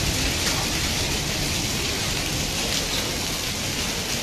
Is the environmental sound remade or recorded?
recorded